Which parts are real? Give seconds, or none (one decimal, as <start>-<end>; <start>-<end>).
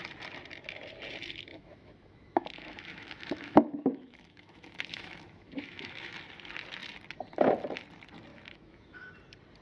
0.0-1.5; 6.1-8.3; 9.1-9.6